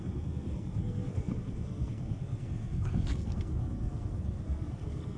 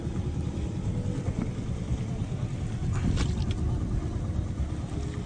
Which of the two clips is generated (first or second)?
first